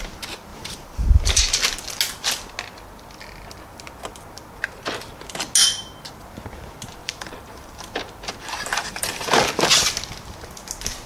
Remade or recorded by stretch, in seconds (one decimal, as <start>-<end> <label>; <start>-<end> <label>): 0.0-0.5 recorded; 0.5-1.4 remade; 1.4-7.0 recorded; 7.0-9.3 remade; 9.3-11.1 recorded